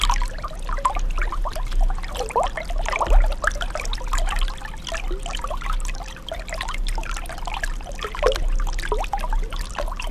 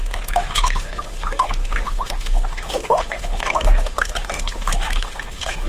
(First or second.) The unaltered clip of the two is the first